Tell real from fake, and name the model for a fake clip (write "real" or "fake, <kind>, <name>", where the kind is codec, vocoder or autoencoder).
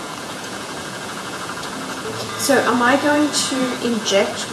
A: fake, vocoder, Vocos